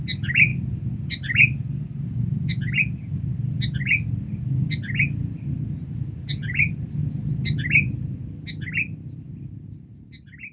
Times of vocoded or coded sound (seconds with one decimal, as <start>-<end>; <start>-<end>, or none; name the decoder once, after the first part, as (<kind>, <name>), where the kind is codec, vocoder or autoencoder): none